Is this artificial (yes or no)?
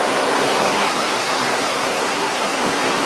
yes